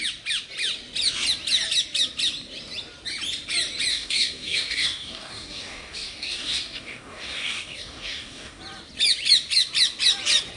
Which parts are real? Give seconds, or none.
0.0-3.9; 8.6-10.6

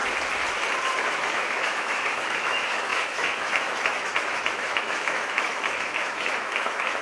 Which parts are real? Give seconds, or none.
0.0-1.1

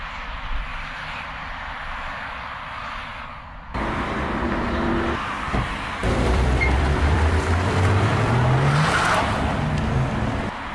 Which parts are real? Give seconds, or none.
0.0-0.7; 1.3-6.0; 8.4-10.7

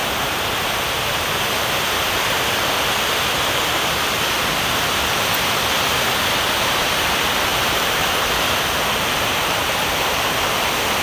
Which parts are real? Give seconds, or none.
4.2-7.5; 8.0-11.0